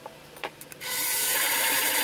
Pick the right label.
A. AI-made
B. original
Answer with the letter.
A